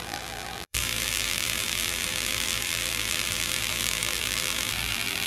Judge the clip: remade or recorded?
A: remade